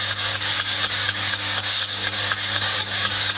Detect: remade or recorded remade